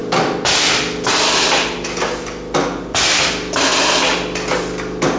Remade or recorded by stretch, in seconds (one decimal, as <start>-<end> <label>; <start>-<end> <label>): 0.0-5.2 recorded